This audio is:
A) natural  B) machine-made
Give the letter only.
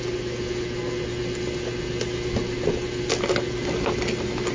A